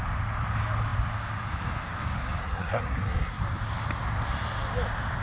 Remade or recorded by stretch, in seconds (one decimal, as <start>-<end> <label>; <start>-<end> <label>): 0.0-2.4 recorded; 2.4-3.4 remade; 3.4-5.2 recorded

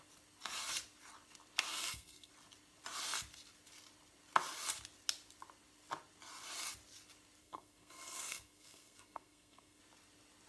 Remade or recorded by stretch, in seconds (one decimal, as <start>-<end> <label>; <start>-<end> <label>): 0.0-1.7 recorded; 1.7-2.3 remade; 2.3-7.4 recorded; 7.4-9.8 remade; 9.8-10.5 recorded